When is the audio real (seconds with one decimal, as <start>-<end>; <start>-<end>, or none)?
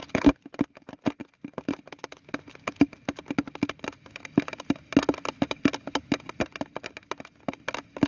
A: 0.0-8.1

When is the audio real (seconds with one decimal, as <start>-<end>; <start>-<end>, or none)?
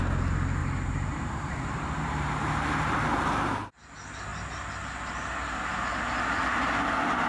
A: 0.0-0.6; 2.5-7.3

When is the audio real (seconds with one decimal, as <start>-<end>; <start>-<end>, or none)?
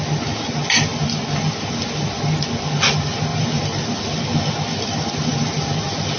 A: 0.0-0.9; 2.1-3.3; 4.2-4.7; 5.7-6.2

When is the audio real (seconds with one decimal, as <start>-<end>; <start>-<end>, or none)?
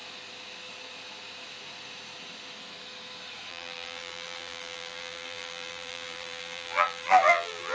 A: 0.0-3.5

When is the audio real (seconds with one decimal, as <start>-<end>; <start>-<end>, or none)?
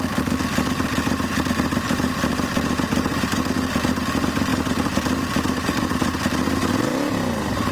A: 0.0-4.5; 6.0-7.7